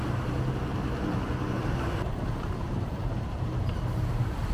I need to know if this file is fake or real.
fake